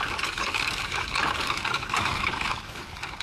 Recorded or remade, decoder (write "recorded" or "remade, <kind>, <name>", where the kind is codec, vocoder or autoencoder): remade, codec, DAC